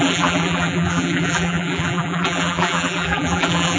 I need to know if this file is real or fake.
fake